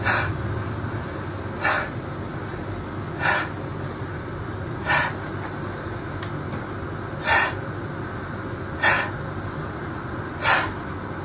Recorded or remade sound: recorded